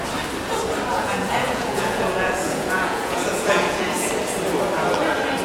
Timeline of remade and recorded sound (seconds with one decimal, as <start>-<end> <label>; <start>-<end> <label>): 0.0-0.9 recorded; 0.9-4.1 remade; 4.1-5.4 recorded